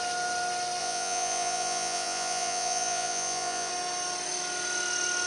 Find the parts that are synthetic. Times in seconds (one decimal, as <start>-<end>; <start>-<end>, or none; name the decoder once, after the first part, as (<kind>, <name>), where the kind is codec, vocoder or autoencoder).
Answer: 0.8-3.7 (vocoder, Vocos)